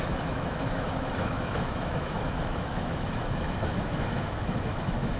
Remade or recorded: remade